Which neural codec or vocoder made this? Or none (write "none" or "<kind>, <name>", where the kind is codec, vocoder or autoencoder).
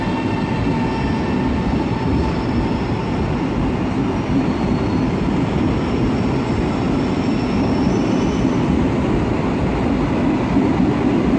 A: none